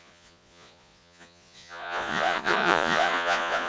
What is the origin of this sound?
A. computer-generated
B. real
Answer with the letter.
A